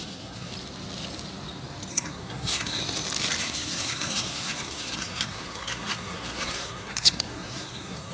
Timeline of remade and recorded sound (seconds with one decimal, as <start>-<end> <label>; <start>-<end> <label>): 0.0-0.5 remade; 0.5-1.9 recorded; 1.9-2.8 remade; 2.8-3.4 recorded; 3.4-8.1 remade